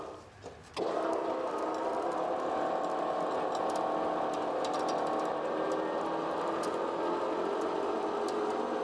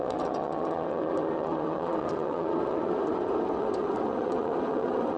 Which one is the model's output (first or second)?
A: second